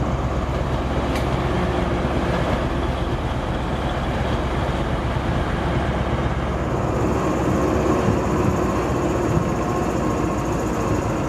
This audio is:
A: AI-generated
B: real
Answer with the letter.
B